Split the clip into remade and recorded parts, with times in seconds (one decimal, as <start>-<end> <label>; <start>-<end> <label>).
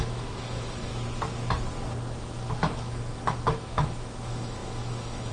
0.0-0.9 remade; 0.9-2.6 recorded; 2.6-5.3 remade